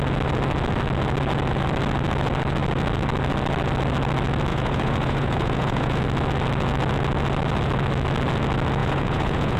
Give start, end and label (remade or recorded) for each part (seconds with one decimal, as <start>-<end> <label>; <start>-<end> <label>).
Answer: 0.0-4.5 recorded; 4.5-6.0 remade; 6.0-8.8 recorded; 8.8-9.6 remade